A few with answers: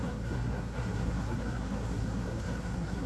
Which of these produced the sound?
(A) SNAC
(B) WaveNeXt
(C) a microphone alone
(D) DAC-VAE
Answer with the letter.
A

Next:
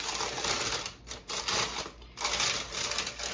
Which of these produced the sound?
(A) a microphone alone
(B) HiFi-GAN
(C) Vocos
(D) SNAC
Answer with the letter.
A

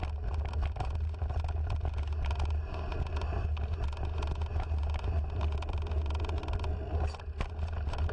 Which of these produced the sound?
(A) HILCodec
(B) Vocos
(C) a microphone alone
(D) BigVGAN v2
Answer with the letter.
C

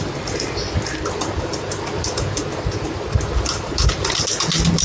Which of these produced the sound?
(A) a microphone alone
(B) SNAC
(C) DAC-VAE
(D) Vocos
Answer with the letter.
A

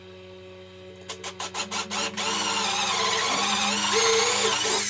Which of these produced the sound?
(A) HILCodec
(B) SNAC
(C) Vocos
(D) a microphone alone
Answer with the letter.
D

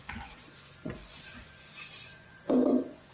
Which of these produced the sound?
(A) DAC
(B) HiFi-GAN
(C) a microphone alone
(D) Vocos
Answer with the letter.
D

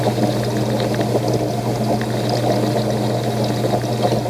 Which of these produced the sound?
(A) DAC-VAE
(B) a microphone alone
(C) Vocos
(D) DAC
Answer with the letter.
B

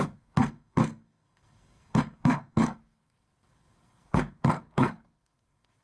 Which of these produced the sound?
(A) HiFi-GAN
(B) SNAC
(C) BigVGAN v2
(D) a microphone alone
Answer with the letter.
B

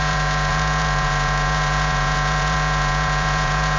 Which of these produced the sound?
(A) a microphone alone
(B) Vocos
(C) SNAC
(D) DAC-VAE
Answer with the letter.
B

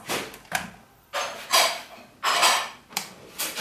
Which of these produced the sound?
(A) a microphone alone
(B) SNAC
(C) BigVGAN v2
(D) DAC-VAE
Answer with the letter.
C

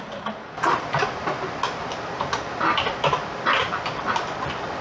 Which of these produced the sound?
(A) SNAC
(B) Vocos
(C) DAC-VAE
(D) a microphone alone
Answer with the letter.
D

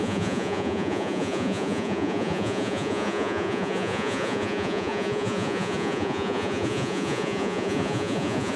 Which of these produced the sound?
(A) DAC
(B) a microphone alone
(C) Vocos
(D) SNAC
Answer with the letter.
C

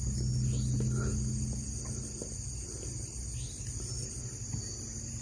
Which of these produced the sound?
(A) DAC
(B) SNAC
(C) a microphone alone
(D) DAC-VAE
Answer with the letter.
C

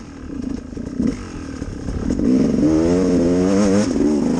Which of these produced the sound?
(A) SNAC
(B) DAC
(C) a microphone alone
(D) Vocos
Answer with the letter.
C